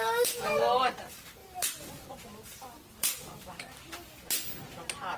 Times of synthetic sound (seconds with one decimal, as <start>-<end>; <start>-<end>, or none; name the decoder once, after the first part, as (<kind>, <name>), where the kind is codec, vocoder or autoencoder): 1.4-3.6 (vocoder, BigVGAN v2)